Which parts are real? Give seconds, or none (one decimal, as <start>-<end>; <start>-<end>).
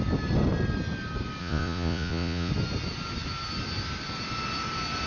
0.0-1.4; 2.5-5.1